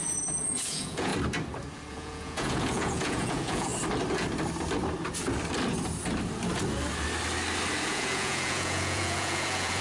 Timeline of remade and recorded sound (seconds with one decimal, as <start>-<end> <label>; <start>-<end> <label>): 0.0-1.1 remade; 1.1-1.9 recorded; 1.9-3.7 remade; 3.7-7.9 recorded; 7.9-9.8 remade